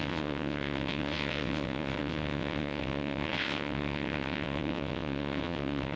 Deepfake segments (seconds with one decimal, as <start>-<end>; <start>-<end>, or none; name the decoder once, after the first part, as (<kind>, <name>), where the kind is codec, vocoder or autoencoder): 0.0-6.0 (vocoder, WaveNeXt)